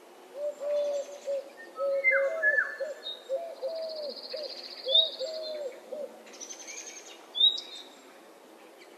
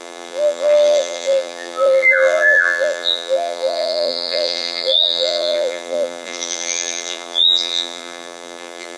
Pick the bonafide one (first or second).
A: first